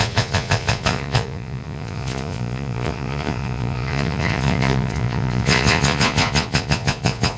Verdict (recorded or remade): remade